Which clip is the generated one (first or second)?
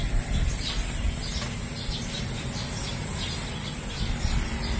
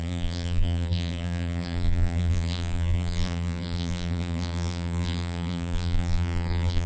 second